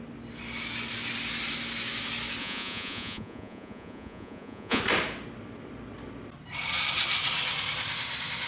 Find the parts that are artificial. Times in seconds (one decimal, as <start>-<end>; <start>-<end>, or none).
2.4-4.8